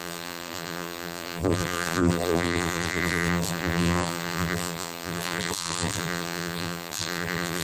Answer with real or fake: fake